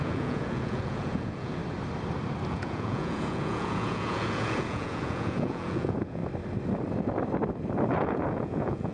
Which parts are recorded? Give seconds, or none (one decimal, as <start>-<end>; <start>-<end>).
1.6-2.5; 6.2-7.9